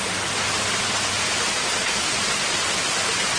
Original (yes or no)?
yes